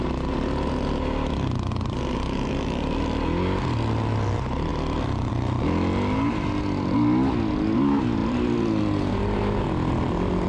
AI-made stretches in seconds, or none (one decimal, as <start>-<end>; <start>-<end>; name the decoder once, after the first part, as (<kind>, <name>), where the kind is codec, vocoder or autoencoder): 4.7-5.3 (vocoder, BigVGAN v2); 8.2-8.8